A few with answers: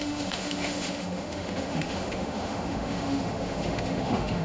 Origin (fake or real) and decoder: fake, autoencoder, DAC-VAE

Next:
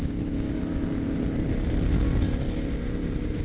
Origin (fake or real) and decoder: real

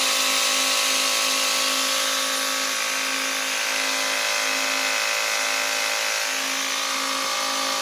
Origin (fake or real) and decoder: real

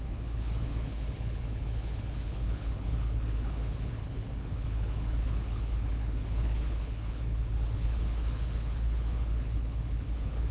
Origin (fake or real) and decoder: fake, codec, HILCodec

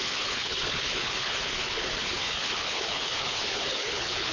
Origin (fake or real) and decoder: fake, codec, HILCodec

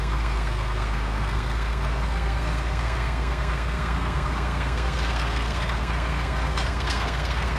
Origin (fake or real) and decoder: fake, codec, SNAC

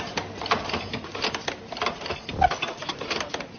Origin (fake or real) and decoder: real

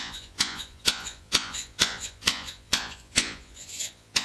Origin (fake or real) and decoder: fake, vocoder, Vocos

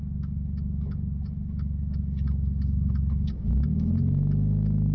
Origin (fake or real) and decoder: fake, codec, DAC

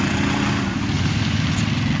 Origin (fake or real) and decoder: real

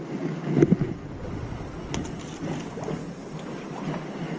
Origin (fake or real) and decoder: real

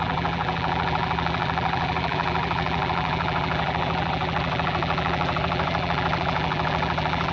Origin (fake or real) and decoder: fake, vocoder, BigVGAN v2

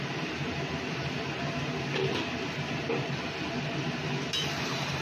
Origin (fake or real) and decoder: real